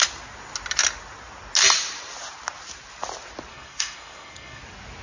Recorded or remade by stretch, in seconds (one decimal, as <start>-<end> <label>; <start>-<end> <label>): 0.0-3.5 recorded; 3.5-4.6 remade; 4.6-5.0 recorded